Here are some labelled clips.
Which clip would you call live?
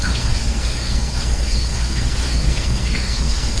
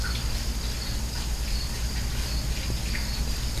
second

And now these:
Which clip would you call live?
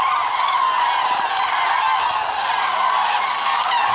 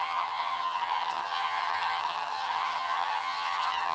first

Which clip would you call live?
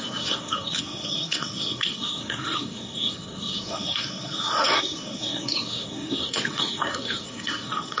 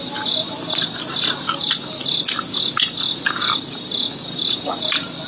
second